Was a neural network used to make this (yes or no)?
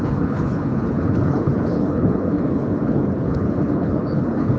yes